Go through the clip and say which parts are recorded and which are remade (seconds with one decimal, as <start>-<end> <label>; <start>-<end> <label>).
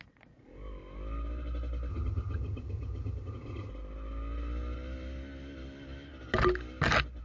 0.0-1.9 recorded; 1.9-3.7 remade; 3.7-7.2 recorded